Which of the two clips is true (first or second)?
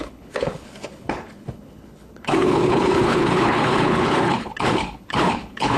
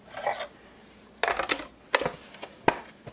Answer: second